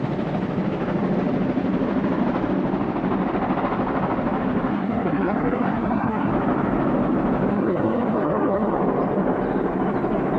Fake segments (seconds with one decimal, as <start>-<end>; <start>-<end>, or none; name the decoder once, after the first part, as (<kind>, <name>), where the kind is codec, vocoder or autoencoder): 4.7-6.3 (codec, SNAC); 7.5-8.8